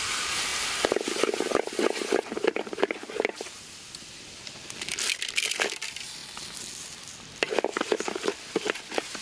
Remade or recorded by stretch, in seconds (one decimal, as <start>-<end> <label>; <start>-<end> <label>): 0.0-9.2 recorded